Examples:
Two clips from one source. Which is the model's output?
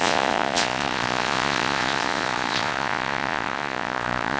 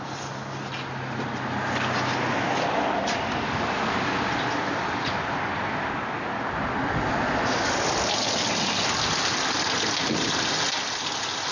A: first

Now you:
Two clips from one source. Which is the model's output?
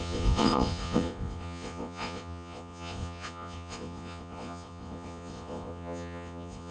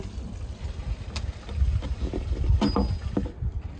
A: first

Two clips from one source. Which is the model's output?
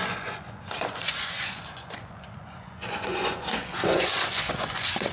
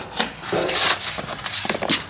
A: first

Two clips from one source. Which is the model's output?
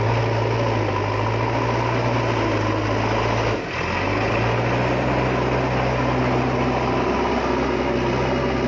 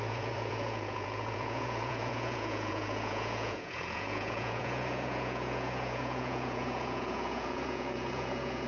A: second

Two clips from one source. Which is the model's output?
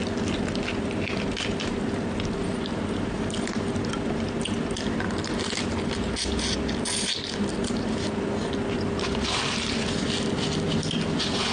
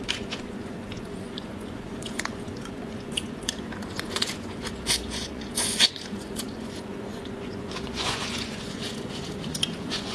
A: second